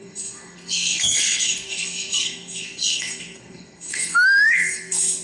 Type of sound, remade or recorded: remade